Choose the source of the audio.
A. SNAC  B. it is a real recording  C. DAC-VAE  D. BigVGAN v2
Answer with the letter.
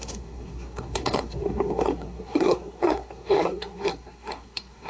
A